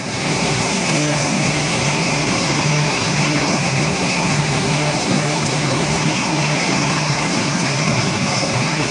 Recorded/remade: remade